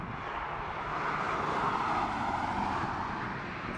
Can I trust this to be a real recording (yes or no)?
yes